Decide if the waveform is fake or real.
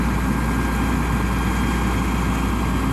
real